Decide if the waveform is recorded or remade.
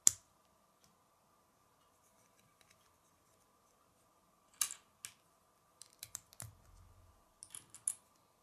recorded